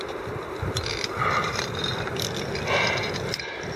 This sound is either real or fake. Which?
real